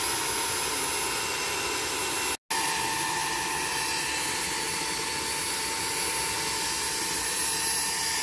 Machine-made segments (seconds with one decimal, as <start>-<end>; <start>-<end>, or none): none